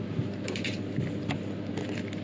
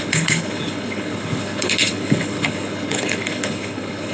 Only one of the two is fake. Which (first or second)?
second